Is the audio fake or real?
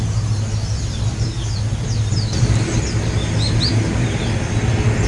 real